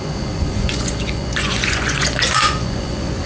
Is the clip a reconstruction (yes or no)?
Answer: yes